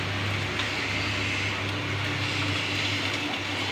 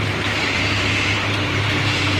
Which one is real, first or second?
first